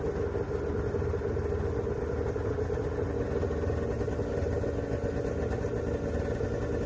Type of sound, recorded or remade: recorded